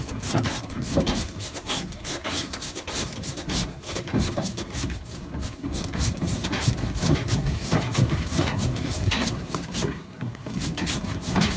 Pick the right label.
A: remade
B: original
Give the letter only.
A